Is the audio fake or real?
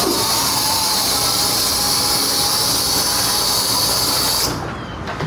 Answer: real